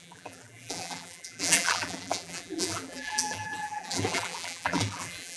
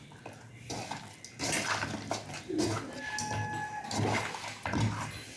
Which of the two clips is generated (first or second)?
first